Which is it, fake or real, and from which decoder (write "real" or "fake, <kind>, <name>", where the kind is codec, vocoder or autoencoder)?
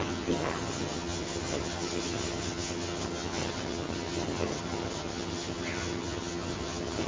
fake, vocoder, HiFi-GAN